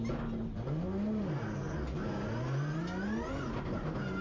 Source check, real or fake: real